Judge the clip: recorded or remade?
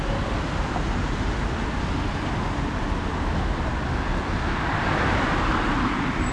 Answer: recorded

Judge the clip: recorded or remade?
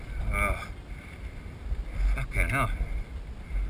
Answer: recorded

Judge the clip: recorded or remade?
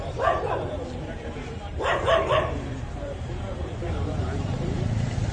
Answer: remade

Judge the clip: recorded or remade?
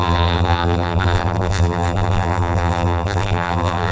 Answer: remade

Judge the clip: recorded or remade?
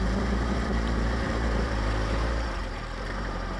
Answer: remade